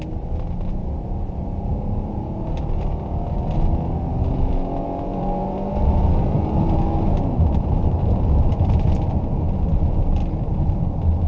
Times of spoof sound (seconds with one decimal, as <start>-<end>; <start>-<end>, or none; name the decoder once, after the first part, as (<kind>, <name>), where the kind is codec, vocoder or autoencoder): 1.7-2.5 (vocoder, BigVGAN v2); 4.1-9.1; 10.2-10.8